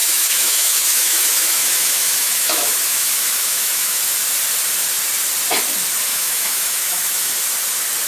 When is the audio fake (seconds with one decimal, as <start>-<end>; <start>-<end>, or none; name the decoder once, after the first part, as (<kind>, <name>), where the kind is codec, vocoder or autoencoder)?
0.0-4.0 (autoencoder, DAC-VAE); 6.1-7.3